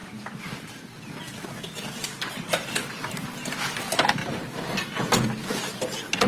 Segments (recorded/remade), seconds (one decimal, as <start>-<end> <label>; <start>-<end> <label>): 0.0-0.7 remade; 0.7-2.0 recorded; 2.0-3.0 remade; 3.0-4.2 recorded; 4.2-5.0 remade; 5.0-6.3 recorded